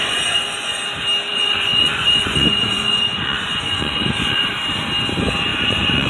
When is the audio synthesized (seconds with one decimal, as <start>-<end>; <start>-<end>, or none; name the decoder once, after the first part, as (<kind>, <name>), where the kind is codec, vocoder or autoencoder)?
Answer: 0.0-0.8 (vocoder, Vocos); 1.3-4.5; 5.5-6.1